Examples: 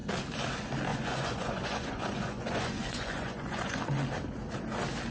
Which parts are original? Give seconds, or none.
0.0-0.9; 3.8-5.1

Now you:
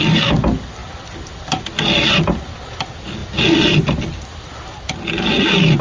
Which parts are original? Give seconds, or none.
0.0-5.8

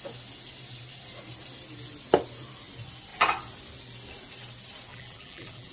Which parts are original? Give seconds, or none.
0.0-4.9